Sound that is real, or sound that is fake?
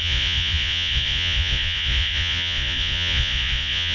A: fake